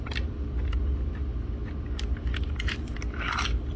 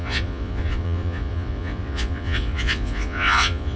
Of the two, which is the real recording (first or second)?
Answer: first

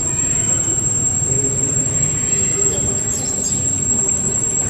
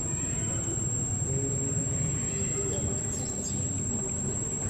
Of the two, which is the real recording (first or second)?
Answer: second